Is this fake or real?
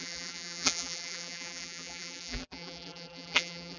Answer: fake